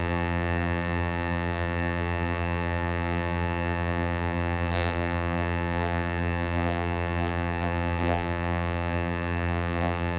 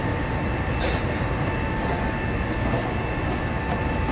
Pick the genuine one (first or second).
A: second